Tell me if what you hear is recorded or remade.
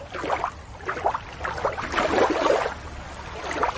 recorded